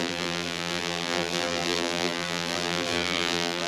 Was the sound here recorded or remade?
remade